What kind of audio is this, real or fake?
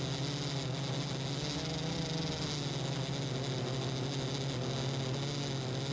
real